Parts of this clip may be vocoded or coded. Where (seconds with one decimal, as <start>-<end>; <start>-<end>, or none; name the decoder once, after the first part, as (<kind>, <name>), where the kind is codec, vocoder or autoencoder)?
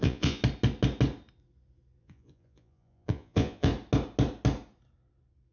0.0-0.4 (vocoder, Vocos); 2.0-3.7